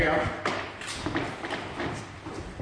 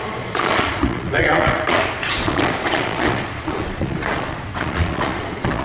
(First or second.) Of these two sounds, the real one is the first